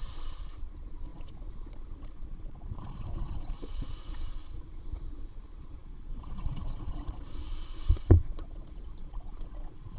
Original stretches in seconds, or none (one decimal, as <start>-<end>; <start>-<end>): none